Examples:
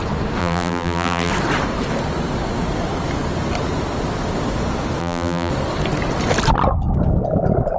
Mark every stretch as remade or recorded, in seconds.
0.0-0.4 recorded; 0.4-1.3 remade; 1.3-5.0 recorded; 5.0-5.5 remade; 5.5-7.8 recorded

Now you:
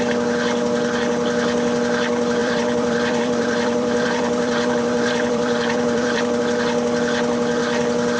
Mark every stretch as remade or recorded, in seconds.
0.0-2.4 recorded; 2.4-6.4 remade; 6.4-8.2 recorded

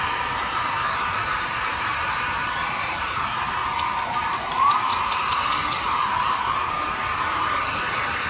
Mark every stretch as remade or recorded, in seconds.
0.0-3.6 remade; 3.6-4.1 recorded; 4.1-4.9 remade; 4.9-8.3 recorded

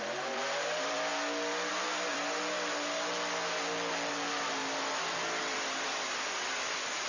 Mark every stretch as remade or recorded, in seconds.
0.0-1.1 remade; 1.1-1.7 recorded; 1.7-2.2 remade; 2.2-5.4 recorded; 5.4-7.1 remade

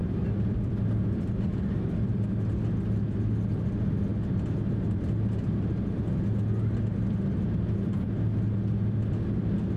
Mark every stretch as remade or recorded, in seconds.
0.0-2.2 remade; 2.2-9.8 recorded

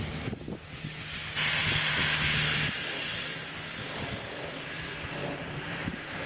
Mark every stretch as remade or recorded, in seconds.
0.0-6.3 recorded

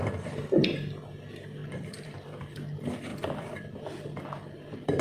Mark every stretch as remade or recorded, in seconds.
0.0-1.6 recorded; 1.6-2.4 remade; 2.4-3.1 recorded; 3.1-4.2 remade; 4.2-5.0 recorded

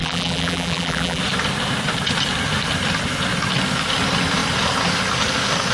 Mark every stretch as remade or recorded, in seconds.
0.0-1.2 remade; 1.2-5.7 recorded